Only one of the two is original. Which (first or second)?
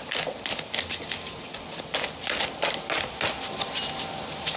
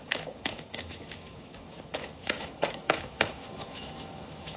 first